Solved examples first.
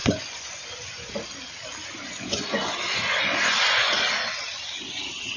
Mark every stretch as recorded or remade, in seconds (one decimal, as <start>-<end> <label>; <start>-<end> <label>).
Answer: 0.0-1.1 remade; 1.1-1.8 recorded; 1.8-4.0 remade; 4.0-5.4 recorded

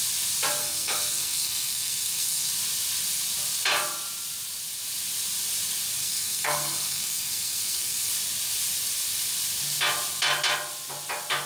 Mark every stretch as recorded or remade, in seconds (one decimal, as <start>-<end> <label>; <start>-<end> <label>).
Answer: 0.0-0.6 recorded; 0.6-2.5 remade; 2.5-6.0 recorded; 6.0-8.1 remade; 8.1-11.5 recorded

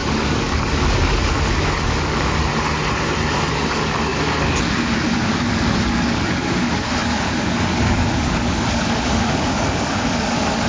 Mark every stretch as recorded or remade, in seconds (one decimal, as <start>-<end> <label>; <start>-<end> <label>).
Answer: 0.0-2.5 remade; 2.5-3.5 recorded; 3.5-10.7 remade

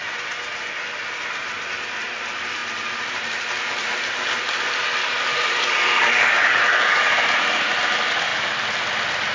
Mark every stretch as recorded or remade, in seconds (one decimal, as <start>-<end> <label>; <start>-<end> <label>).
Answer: 0.0-5.0 recorded; 5.0-7.0 remade; 7.0-9.3 recorded